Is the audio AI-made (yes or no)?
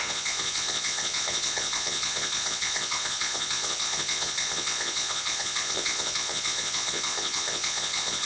yes